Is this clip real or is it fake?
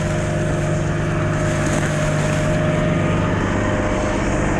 real